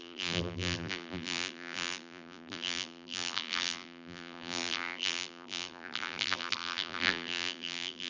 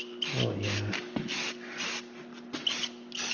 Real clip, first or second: second